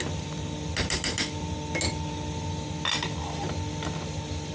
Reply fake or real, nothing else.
real